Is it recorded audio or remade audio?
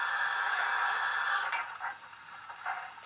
recorded